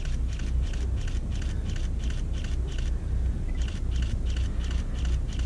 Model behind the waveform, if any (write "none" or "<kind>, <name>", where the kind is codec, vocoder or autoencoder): none